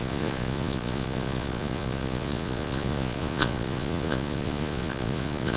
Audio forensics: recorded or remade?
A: remade